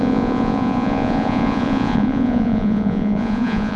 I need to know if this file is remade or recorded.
remade